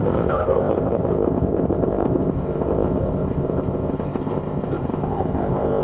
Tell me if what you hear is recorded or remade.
remade